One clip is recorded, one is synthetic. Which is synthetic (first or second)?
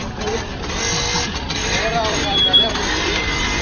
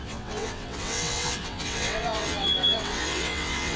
second